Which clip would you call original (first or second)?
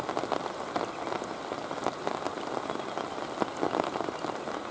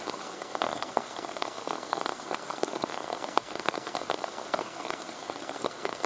first